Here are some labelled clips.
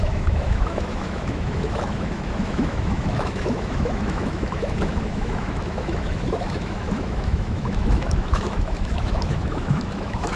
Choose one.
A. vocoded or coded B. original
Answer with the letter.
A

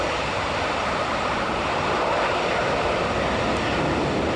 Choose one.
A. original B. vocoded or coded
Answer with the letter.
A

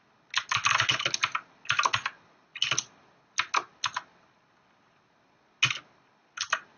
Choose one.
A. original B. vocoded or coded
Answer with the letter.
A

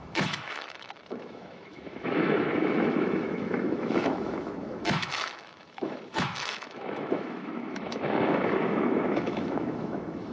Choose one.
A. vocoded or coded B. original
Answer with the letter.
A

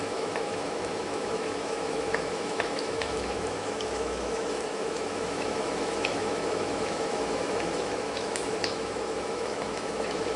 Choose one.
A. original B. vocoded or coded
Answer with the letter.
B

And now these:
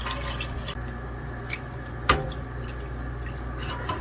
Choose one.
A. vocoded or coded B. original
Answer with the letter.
B